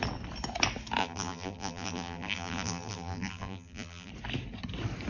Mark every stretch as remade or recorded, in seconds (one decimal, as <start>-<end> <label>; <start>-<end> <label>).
0.0-1.0 recorded; 1.0-4.1 remade; 4.1-5.1 recorded